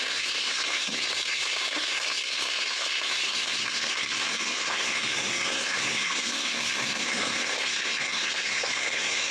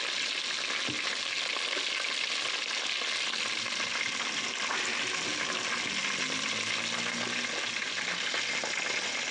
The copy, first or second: first